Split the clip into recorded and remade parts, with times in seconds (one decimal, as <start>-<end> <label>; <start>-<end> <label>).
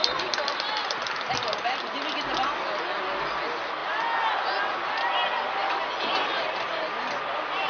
0.0-7.7 recorded